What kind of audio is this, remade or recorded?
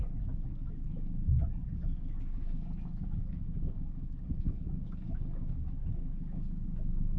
remade